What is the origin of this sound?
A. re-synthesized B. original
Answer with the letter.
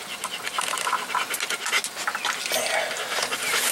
B